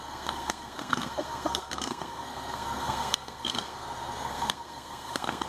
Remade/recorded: remade